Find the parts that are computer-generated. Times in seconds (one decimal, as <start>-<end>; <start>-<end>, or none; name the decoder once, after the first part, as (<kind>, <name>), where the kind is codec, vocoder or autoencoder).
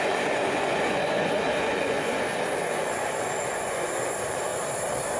0.0-4.5 (vocoder, Vocos)